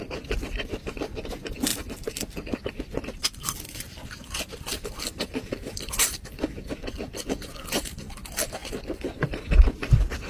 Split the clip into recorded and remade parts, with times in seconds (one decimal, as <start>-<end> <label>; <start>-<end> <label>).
0.0-1.7 recorded; 1.7-5.9 remade; 5.9-8.6 recorded; 8.6-10.3 remade